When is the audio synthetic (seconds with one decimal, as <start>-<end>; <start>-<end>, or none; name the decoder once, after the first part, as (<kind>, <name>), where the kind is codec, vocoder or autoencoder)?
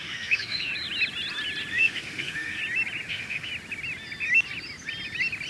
0.0-0.7 (autoencoder, DAC-VAE); 1.7-2.6; 3.1-3.5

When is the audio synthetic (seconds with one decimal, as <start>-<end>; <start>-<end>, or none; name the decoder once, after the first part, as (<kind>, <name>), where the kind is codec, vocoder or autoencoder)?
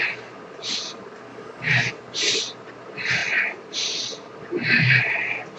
1.3-1.9 (codec, DAC)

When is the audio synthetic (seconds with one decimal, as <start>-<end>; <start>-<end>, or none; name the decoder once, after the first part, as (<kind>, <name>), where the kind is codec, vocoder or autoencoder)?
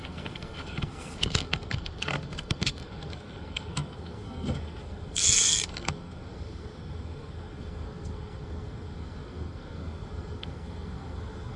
0.0-11.6 (codec, SNAC)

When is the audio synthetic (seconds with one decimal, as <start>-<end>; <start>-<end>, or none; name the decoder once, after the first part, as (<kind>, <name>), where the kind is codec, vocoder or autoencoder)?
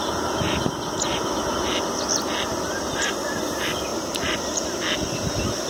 2.5-3.4 (vocoder, BigVGAN v2); 3.9-4.7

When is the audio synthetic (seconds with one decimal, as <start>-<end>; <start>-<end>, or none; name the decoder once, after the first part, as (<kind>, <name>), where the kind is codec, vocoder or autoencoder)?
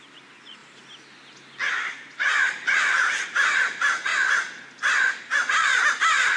0.0-0.6 (vocoder, BigVGAN v2); 1.7-4.1; 5.2-6.4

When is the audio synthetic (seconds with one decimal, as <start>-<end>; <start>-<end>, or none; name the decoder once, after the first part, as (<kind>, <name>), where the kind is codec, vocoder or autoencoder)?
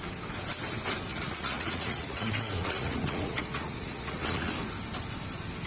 1.1-4.5 (vocoder, Vocos)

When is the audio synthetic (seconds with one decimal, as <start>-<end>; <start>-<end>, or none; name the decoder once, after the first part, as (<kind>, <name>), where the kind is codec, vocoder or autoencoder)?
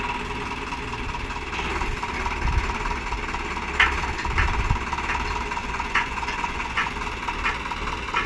5.6-6.9 (vocoder, Vocos)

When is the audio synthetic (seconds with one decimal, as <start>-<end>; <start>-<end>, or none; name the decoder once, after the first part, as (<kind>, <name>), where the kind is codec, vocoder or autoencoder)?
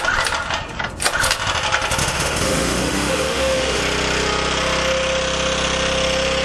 2.0-3.8 (autoencoder, DAC-VAE)